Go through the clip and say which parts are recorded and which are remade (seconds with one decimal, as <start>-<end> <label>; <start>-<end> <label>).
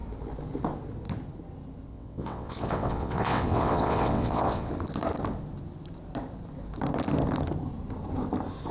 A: 0.0-1.9 recorded; 1.9-4.7 remade; 4.7-8.7 recorded